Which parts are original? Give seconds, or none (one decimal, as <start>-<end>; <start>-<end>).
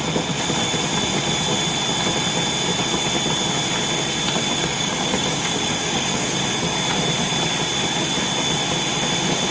0.0-4.6; 6.4-9.5